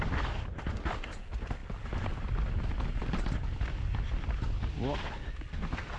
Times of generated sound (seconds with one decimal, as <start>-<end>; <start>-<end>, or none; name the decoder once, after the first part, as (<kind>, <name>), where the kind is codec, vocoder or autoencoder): none